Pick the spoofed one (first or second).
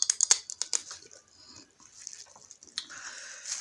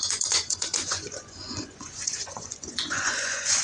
second